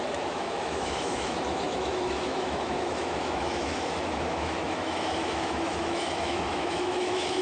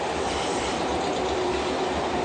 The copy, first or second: first